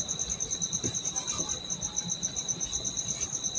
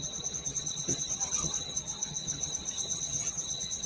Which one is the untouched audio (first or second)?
first